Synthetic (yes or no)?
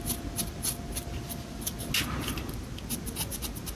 no